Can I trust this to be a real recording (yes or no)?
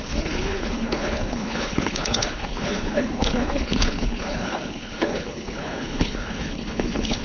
no